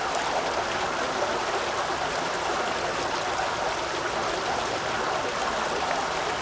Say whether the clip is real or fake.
real